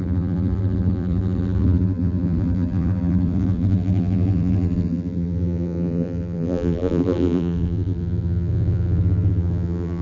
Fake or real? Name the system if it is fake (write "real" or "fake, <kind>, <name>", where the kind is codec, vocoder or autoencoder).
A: fake, vocoder, BigVGAN v2